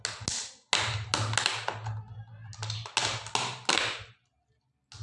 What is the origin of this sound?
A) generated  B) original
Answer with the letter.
B